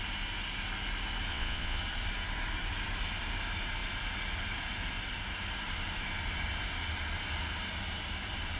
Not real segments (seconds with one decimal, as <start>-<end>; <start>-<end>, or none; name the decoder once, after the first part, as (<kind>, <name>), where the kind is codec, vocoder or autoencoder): 1.3-1.8 (vocoder, WaveNeXt)